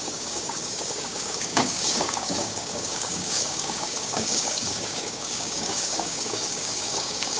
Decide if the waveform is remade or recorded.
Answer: remade